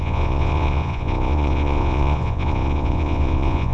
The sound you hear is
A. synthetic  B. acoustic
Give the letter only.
A